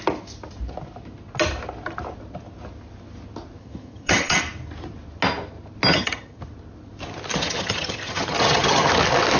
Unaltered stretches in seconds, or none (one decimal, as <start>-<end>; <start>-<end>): 0.0-3.6; 4.4-5.9; 6.4-7.3; 8.9-9.4

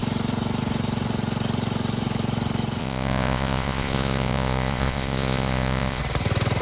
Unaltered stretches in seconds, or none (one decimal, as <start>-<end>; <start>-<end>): 0.0-2.8; 6.0-6.6

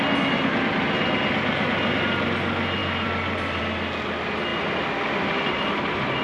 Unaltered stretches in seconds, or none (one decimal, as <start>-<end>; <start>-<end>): 0.0-2.8; 3.6-4.5; 5.7-6.2

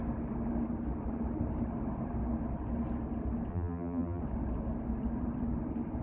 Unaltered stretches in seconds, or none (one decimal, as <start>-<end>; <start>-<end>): 0.0-3.5; 4.2-6.0

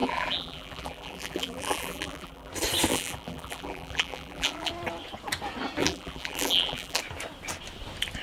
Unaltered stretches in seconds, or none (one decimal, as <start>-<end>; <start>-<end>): 2.5-2.9; 4.7-5.8; 7.0-8.2